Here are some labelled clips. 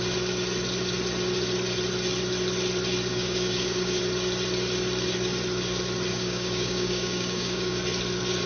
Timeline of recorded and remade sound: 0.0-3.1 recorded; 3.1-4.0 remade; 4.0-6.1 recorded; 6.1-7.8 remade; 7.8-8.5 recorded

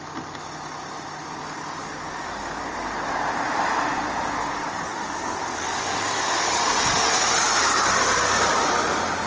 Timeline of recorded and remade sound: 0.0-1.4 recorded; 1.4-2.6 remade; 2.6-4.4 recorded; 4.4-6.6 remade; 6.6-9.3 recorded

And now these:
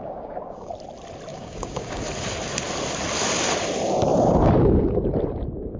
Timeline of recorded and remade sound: 0.0-0.7 remade; 0.7-1.3 recorded; 1.3-2.0 remade; 2.0-5.8 recorded

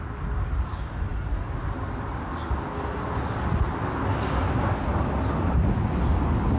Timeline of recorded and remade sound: 0.0-6.6 recorded

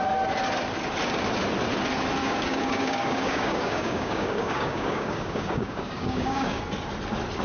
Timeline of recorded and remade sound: 0.0-2.2 recorded; 2.2-6.6 remade; 6.6-7.4 recorded

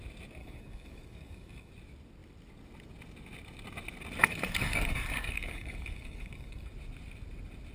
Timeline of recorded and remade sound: 0.0-0.4 recorded; 0.4-1.7 remade; 1.7-4.2 recorded; 4.2-6.7 remade; 6.7-7.7 recorded

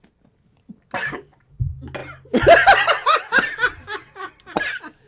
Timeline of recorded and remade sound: 0.0-3.8 recorded; 3.8-4.3 remade; 4.3-5.1 recorded

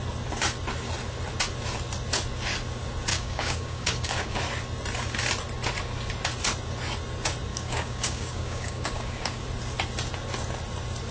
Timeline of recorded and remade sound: 0.0-3.1 recorded; 3.1-4.4 remade; 4.4-7.5 recorded; 7.5-9.4 remade; 9.4-11.1 recorded